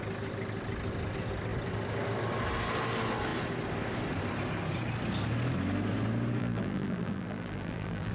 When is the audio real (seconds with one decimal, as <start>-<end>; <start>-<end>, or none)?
0.0-6.4